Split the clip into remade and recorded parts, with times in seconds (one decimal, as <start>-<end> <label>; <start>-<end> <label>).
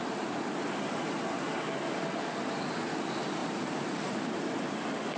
0.0-3.4 recorded; 3.4-4.3 remade; 4.3-5.2 recorded